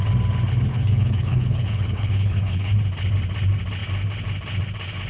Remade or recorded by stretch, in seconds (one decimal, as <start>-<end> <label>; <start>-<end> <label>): 0.0-0.7 recorded; 0.7-2.7 remade; 2.7-5.1 recorded